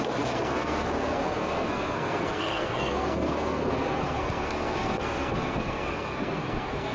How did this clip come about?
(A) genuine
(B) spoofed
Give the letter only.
B